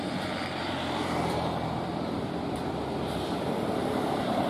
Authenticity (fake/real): fake